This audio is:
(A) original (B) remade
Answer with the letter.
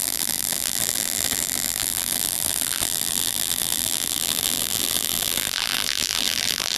B